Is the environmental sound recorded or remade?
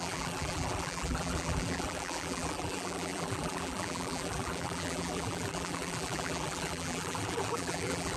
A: remade